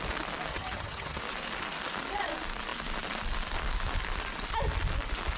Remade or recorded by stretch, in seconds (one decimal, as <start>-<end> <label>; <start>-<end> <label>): 0.0-0.5 recorded; 0.5-1.2 remade; 1.2-5.4 recorded